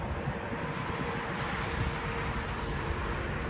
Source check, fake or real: fake